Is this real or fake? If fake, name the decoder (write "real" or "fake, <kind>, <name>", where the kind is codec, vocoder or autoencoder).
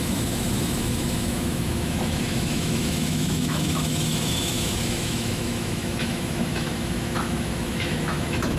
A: fake, autoencoder, DAC-VAE